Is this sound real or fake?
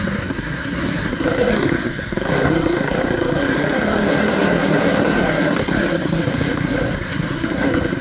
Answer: fake